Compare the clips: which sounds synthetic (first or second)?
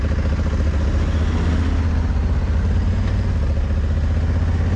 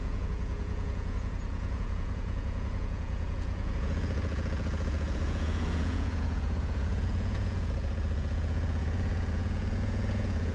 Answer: second